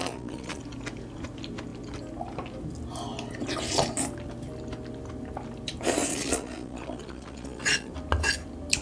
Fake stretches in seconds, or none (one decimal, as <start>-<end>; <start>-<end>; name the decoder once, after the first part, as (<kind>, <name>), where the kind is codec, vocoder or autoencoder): 0.0-0.6 (vocoder, Vocos); 6.1-7.9